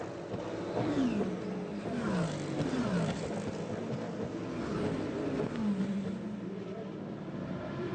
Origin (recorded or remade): recorded